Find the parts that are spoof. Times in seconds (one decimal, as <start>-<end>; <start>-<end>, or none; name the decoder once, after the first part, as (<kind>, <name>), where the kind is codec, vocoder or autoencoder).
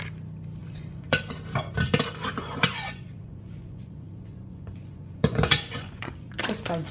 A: 0.6-1.2 (vocoder, Vocos); 2.4-6.5